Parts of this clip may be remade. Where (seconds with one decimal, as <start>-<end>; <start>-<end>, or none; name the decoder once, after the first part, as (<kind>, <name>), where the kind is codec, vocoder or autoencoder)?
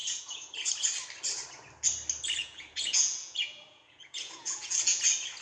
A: 0.0-0.7 (vocoder, Vocos); 2.4-5.0